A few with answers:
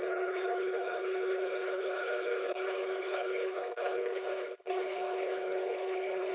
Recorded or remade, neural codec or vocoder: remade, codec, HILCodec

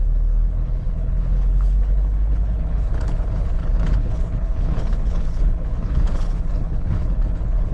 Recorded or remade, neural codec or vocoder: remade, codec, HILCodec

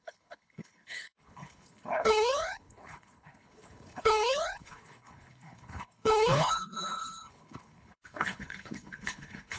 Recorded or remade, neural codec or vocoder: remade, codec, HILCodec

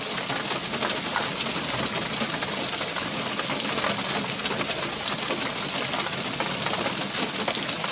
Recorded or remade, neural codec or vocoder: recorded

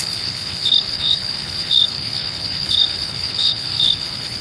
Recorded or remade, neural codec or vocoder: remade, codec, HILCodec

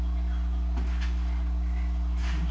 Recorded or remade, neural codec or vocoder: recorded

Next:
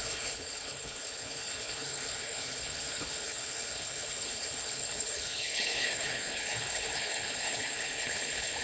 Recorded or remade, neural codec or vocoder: remade, codec, HILCodec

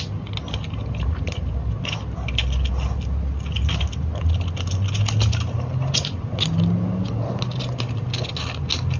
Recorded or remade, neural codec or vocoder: recorded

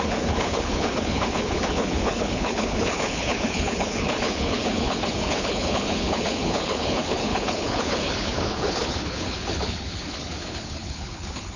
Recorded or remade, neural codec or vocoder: remade, codec, HILCodec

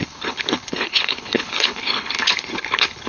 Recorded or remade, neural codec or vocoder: remade, codec, HILCodec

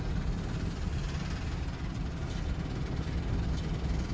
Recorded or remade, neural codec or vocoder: recorded